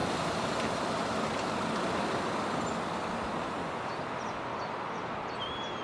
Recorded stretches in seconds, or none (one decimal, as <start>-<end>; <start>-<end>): 0.0-5.8